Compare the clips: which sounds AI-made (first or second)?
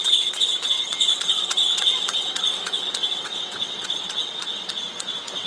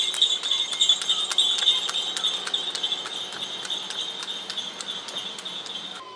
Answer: first